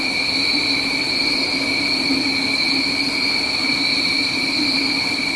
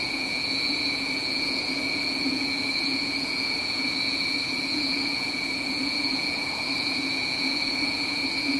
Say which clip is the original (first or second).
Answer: first